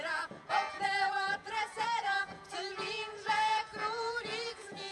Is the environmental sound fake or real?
fake